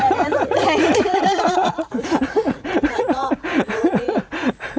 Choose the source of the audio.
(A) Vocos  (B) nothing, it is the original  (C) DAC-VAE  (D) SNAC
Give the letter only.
A